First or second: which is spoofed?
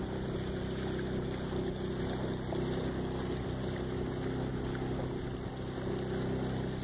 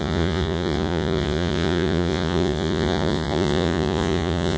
second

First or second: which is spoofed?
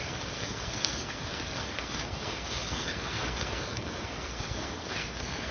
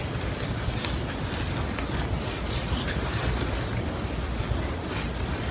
first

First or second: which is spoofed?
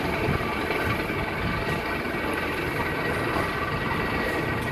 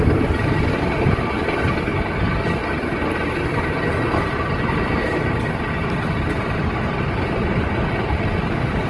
second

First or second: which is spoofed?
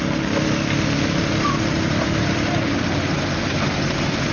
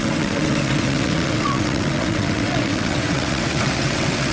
second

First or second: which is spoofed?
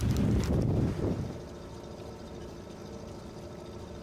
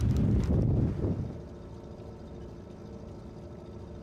first